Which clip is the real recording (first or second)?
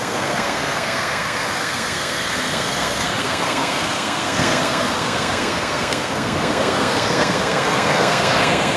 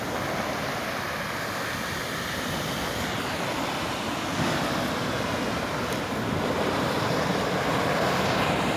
second